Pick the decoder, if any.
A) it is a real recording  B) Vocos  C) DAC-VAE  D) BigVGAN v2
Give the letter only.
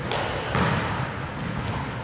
A